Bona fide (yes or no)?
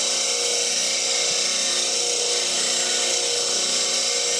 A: yes